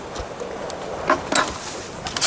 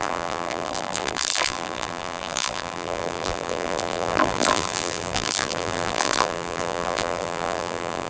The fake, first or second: second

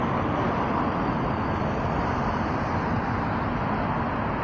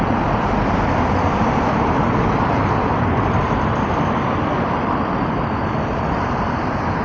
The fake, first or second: second